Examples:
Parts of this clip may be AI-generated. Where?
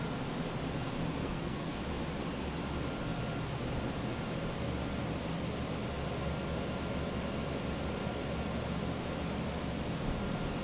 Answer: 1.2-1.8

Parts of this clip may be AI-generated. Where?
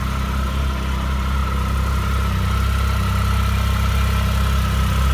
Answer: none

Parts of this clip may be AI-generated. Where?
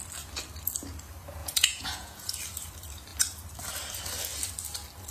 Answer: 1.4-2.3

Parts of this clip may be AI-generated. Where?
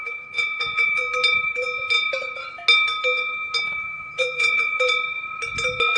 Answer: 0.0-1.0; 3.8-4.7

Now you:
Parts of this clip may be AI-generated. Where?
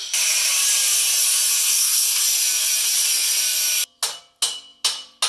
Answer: 1.6-2.2